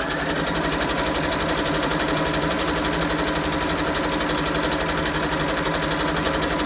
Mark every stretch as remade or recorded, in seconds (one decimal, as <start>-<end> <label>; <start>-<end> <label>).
0.0-3.0 remade; 3.0-6.7 recorded